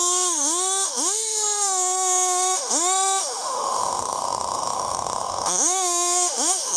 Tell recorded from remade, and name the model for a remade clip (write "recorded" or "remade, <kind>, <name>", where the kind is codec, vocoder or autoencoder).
remade, autoencoder, DAC-VAE